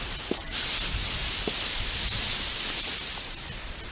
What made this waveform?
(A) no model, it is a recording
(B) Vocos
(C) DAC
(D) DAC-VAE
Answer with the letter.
A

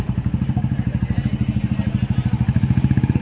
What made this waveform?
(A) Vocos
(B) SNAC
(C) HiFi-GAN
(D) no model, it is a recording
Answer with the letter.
D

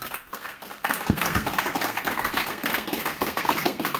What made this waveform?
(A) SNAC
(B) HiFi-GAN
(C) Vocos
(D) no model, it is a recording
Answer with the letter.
A